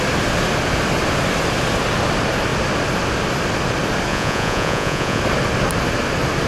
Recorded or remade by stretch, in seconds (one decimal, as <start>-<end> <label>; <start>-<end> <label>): 0.0-4.1 recorded; 4.1-5.2 remade; 5.2-6.5 recorded